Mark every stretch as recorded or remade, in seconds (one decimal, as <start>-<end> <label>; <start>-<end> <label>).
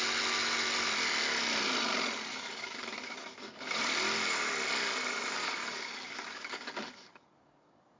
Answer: 0.0-2.3 recorded; 2.3-3.8 remade; 3.8-5.4 recorded; 5.4-8.0 remade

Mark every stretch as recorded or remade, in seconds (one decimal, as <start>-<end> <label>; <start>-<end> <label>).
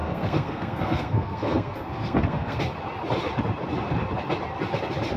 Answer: 0.0-2.6 remade; 2.6-5.2 recorded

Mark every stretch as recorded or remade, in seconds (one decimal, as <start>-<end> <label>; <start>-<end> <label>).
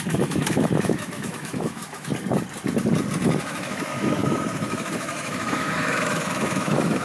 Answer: 0.0-2.1 remade; 2.1-3.4 recorded; 3.4-7.0 remade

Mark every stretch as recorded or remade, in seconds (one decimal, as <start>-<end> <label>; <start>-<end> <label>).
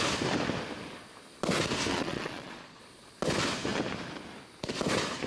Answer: 0.0-1.9 recorded; 1.9-2.8 remade; 2.8-5.3 recorded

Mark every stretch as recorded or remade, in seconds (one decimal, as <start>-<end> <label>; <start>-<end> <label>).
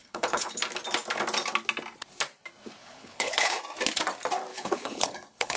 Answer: 0.0-0.6 remade; 0.6-2.8 recorded; 2.8-3.6 remade; 3.6-4.5 recorded; 4.5-5.6 remade